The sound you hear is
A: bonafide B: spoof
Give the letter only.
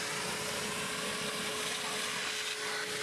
A